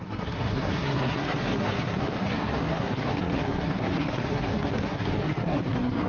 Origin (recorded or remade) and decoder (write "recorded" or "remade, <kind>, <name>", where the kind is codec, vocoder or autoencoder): remade, codec, SNAC